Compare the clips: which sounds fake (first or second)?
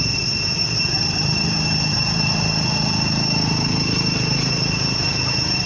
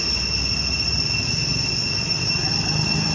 first